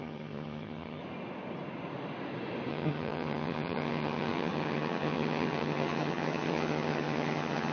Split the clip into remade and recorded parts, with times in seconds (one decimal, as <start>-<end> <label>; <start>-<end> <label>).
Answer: 0.0-1.0 remade; 1.0-2.7 recorded; 2.7-7.7 remade